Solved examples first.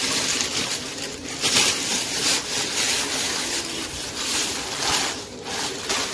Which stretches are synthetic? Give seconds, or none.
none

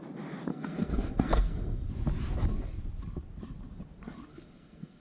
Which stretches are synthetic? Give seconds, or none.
0.5-1.9 (codec, SNAC); 4.3-5.0

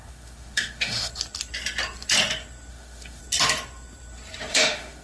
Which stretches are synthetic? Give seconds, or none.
0.0-1.1 (autoencoder, DAC-VAE); 2.7-3.2; 4.5-5.0